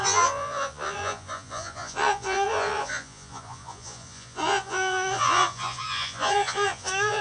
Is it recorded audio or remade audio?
remade